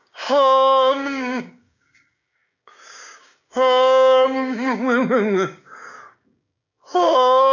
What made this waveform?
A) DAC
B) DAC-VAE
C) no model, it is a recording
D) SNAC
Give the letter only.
A